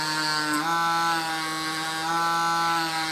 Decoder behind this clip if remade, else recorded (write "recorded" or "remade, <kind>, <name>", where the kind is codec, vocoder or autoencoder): recorded